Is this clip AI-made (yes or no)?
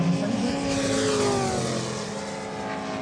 no